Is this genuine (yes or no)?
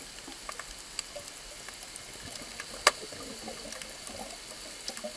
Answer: yes